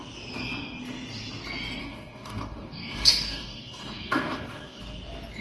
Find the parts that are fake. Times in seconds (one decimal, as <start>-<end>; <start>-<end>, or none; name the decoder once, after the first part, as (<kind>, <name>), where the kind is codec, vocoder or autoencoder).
1.8-4.8 (codec, DAC)